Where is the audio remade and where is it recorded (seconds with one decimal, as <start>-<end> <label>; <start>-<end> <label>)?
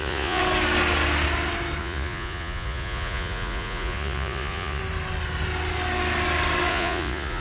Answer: 0.0-0.4 remade; 0.4-1.8 recorded; 1.8-4.8 remade; 4.8-6.7 recorded; 6.7-7.4 remade